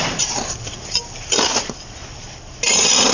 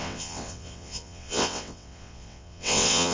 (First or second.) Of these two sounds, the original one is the first